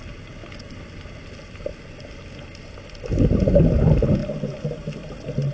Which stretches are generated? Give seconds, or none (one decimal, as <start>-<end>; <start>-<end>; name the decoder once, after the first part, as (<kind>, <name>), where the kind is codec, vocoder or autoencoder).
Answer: 0.0-0.4 (vocoder, BigVGAN v2); 3.7-5.5